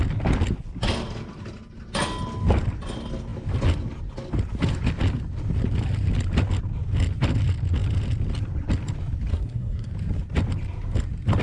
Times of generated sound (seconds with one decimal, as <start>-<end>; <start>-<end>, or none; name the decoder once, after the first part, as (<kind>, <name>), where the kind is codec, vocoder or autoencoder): 9.3-9.9 (codec, SNAC)